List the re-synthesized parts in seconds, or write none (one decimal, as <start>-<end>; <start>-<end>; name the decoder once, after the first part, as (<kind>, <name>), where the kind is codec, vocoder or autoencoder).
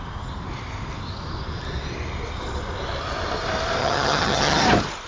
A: 3.8-4.6 (vocoder, HiFi-GAN)